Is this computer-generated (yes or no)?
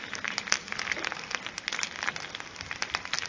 no